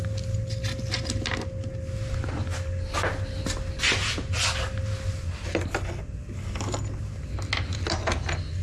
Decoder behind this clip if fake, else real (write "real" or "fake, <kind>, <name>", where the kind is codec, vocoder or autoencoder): real